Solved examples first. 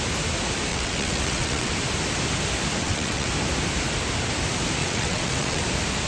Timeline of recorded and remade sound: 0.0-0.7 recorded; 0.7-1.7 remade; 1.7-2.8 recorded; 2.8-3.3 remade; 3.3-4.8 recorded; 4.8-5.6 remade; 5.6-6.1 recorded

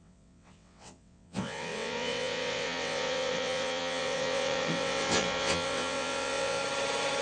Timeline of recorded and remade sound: 0.0-6.6 remade; 6.6-7.2 recorded